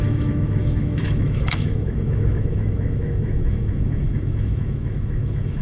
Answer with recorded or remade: remade